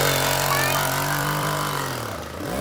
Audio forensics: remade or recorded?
remade